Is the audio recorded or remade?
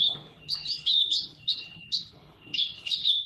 remade